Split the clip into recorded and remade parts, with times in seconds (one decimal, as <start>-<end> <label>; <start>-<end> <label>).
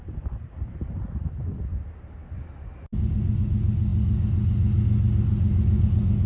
0.0-6.3 recorded